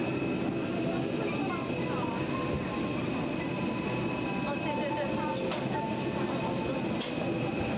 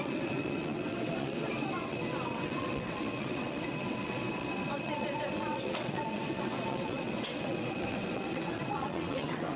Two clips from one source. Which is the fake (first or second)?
second